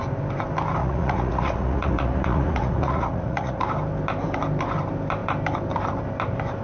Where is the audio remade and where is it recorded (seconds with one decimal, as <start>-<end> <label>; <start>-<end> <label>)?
0.0-0.8 recorded; 0.8-3.6 remade; 3.6-6.6 recorded